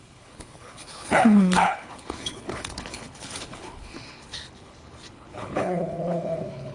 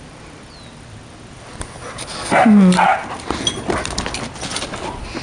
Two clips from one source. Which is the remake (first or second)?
first